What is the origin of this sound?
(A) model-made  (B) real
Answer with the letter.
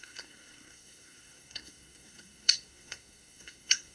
A